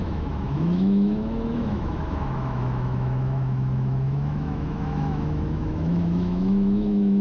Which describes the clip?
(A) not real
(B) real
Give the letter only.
A